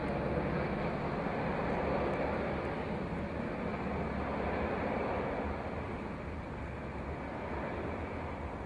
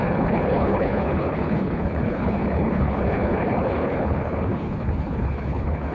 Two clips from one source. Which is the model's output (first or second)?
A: second